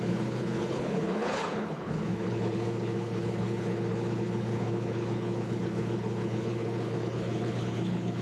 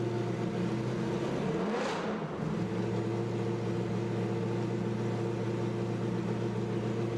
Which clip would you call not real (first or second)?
first